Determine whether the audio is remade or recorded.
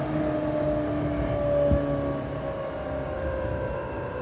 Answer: recorded